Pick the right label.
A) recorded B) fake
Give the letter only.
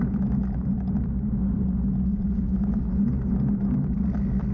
A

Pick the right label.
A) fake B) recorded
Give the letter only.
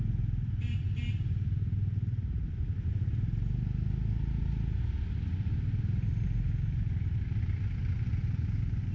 B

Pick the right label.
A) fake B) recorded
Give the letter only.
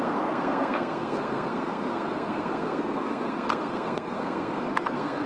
A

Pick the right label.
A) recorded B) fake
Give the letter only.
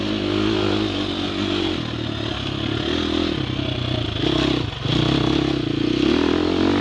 A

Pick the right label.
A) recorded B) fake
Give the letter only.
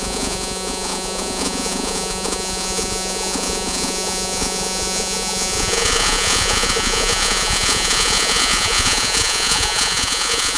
B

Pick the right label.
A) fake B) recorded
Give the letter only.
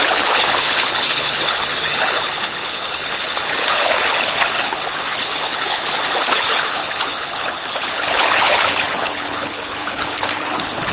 A